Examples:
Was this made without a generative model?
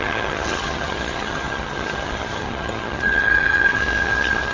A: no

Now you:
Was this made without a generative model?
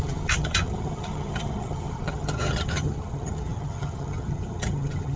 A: no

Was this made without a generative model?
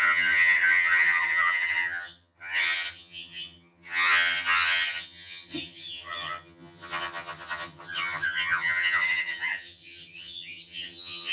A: no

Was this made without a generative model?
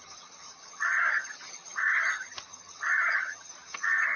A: no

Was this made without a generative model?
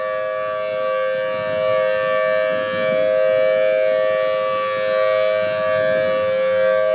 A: yes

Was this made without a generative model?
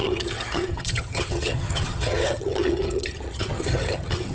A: no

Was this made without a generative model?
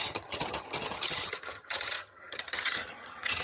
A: no